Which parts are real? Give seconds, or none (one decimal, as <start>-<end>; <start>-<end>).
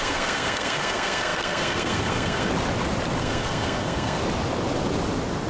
2.5-3.2; 4.2-5.5